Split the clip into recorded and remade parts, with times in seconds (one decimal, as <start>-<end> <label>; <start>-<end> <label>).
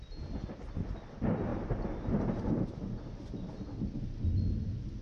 0.0-5.0 recorded